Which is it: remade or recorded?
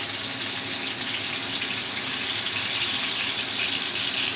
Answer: recorded